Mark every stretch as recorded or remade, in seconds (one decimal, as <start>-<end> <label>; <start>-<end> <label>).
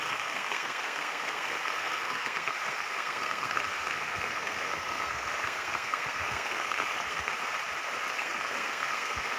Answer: 0.0-7.3 remade; 7.3-8.1 recorded; 8.1-9.4 remade